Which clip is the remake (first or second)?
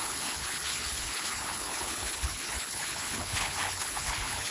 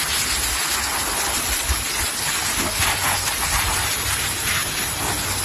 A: first